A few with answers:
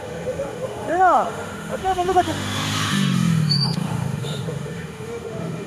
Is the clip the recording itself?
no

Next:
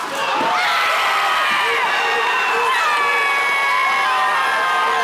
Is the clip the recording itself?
yes